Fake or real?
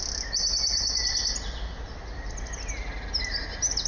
real